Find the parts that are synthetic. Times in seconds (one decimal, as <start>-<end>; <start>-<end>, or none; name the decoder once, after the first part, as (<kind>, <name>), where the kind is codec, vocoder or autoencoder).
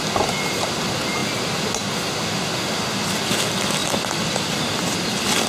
none